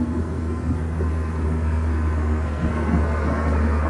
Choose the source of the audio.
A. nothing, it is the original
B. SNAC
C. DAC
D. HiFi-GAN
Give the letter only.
B